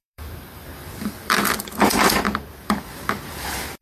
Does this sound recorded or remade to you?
remade